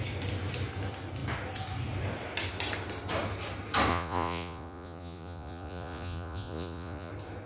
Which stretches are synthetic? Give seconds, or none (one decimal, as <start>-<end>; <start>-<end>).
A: 3.9-7.1